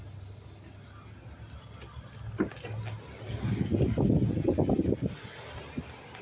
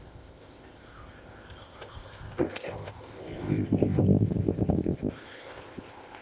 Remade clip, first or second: second